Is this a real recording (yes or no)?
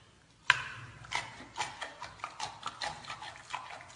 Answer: yes